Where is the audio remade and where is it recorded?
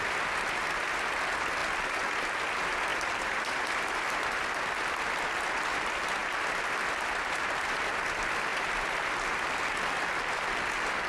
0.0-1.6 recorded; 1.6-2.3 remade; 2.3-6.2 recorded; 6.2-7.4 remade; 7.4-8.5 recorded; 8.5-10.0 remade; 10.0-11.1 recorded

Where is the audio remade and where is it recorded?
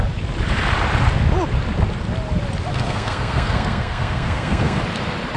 0.0-2.7 recorded; 2.7-4.8 remade; 4.8-5.4 recorded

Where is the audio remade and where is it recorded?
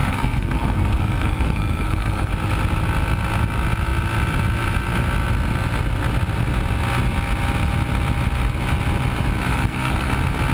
0.0-2.3 remade; 2.3-9.5 recorded; 9.5-10.1 remade; 10.1-10.5 recorded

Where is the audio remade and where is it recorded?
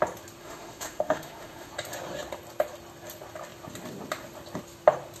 0.0-0.4 recorded; 0.4-1.7 remade; 1.7-5.2 recorded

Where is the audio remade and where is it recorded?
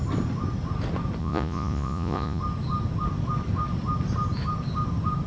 0.0-1.2 recorded; 1.2-2.4 remade; 2.4-5.3 recorded